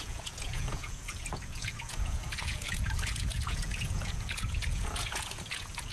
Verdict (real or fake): fake